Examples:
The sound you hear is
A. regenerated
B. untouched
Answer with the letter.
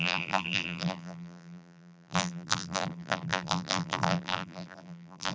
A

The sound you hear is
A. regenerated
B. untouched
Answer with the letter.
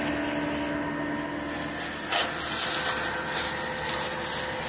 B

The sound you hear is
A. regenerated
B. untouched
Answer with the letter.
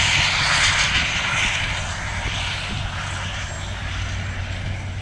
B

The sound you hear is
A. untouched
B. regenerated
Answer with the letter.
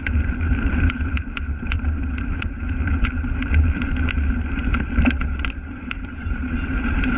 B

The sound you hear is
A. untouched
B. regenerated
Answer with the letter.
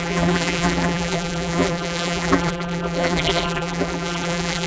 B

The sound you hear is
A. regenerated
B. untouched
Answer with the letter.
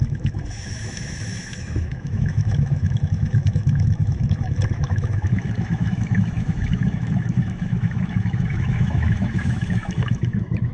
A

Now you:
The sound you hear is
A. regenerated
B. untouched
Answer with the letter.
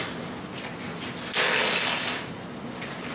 B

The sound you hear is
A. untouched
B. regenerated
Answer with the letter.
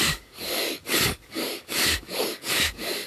B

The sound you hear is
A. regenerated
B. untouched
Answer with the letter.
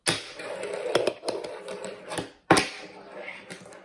B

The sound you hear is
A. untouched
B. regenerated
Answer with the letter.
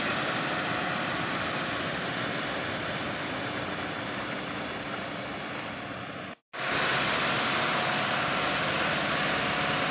A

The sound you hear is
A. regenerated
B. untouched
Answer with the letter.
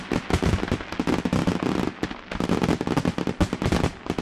B